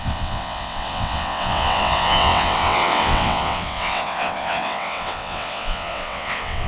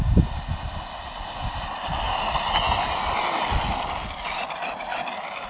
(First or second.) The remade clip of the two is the first